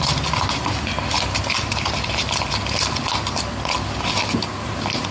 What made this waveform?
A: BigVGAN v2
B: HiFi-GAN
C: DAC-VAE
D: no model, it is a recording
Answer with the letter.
D